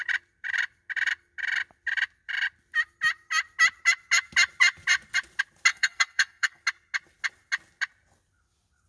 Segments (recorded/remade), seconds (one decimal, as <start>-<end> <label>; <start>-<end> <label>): 0.0-5.7 recorded; 5.7-6.6 remade; 6.6-8.9 recorded